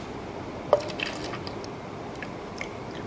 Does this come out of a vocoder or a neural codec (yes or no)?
no